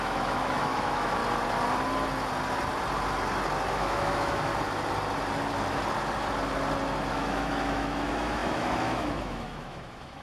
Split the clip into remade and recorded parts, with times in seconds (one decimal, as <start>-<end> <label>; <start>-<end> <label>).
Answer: 0.0-1.2 remade; 1.2-3.7 recorded; 3.7-4.5 remade; 4.5-7.1 recorded; 7.1-10.2 remade